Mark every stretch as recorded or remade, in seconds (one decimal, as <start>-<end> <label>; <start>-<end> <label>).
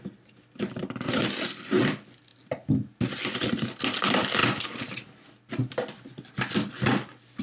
0.0-7.4 recorded